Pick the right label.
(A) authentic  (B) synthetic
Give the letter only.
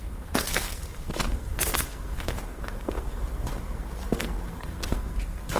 B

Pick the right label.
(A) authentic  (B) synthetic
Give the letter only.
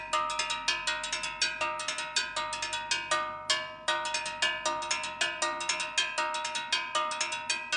A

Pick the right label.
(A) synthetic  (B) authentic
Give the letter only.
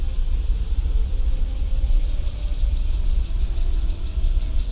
B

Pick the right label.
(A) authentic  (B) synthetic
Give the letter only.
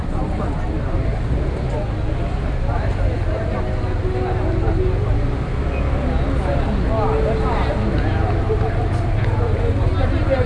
A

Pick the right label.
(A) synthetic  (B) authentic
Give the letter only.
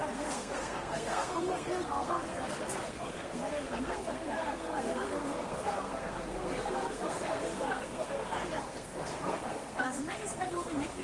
A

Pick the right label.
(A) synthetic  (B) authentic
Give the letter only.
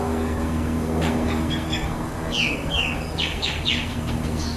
A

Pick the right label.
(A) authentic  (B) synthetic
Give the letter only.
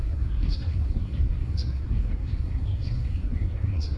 B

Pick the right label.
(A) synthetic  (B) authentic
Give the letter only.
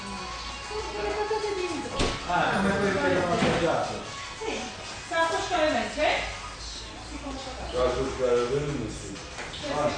B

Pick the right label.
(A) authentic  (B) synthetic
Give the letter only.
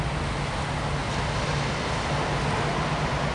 A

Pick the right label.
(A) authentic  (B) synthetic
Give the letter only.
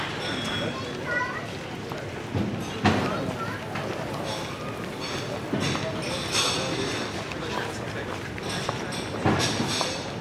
A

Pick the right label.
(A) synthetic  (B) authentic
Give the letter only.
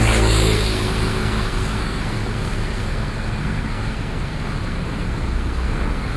A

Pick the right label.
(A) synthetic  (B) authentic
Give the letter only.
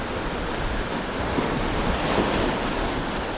B